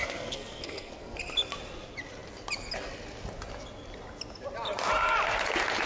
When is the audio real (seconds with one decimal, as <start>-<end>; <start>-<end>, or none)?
1.2-5.9